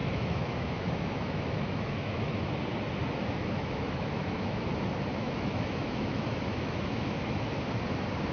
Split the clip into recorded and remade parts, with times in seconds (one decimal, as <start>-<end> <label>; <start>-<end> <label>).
0.0-2.5 remade; 2.5-3.2 recorded; 3.2-4.7 remade; 4.7-5.2 recorded; 5.2-7.5 remade; 7.5-8.3 recorded